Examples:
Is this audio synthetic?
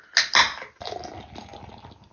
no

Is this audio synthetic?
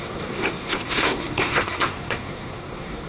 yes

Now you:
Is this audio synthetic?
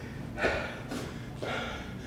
no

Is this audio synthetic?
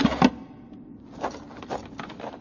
no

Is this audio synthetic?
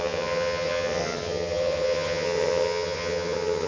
yes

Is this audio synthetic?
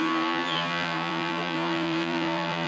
yes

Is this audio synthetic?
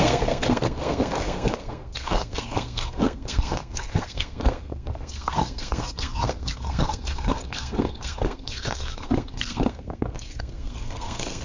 yes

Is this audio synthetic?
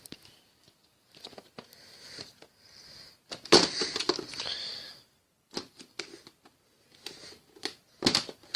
no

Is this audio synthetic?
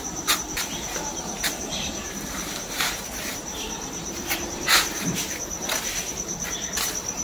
yes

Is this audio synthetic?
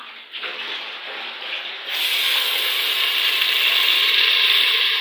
no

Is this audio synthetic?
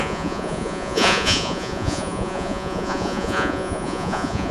yes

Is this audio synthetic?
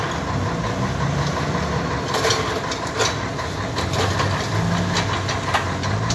no